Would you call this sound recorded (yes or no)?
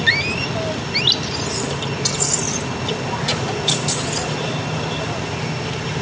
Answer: yes